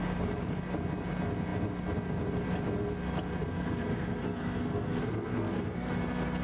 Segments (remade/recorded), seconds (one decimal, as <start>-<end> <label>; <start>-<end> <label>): 0.0-3.4 recorded; 3.4-5.9 remade; 5.9-6.4 recorded